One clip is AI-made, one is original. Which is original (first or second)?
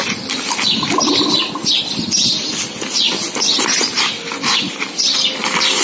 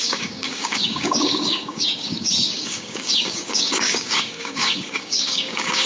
first